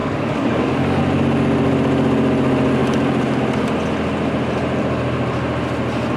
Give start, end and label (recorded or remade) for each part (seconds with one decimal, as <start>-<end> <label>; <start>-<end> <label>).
0.0-1.0 remade; 1.0-6.2 recorded